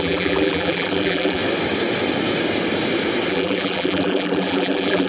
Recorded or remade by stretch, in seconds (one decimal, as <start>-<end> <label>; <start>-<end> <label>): 0.0-1.4 remade; 1.4-3.3 recorded; 3.3-5.1 remade